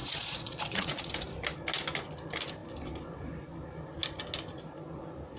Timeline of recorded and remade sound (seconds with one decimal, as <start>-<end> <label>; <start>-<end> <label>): 0.0-1.1 remade; 1.1-5.4 recorded